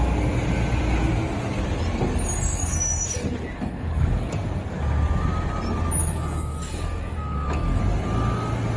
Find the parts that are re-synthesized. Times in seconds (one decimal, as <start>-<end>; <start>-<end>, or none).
2.5-4.3; 6.0-7.8